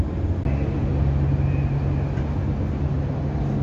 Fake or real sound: real